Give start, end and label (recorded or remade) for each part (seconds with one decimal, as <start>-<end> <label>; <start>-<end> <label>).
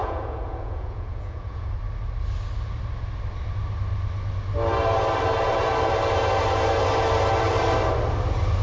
0.0-1.7 remade; 1.7-8.6 recorded